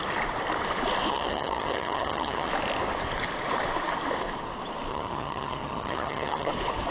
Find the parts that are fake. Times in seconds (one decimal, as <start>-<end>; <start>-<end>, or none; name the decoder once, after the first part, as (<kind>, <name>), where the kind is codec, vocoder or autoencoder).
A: 1.1-2.5 (vocoder, HiFi-GAN); 4.9-6.5

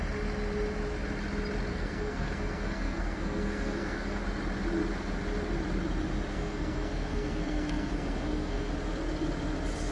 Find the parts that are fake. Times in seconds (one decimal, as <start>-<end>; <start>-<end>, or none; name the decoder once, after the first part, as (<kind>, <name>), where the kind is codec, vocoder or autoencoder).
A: 1.7-4.2 (codec, SNAC); 6.3-8.7